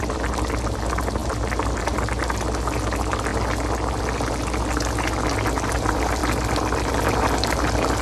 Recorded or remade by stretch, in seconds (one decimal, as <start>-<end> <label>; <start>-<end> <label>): 0.0-8.0 recorded